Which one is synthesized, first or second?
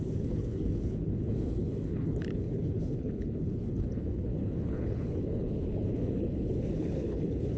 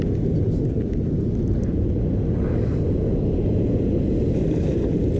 first